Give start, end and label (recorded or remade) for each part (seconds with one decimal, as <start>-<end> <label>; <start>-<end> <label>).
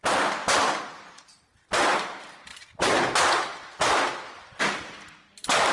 0.0-0.4 recorded; 0.4-1.1 remade; 1.1-2.5 recorded; 2.5-3.0 remade; 3.0-5.7 recorded